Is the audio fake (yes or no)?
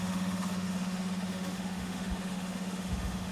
yes